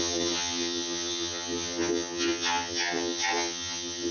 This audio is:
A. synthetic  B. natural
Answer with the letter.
A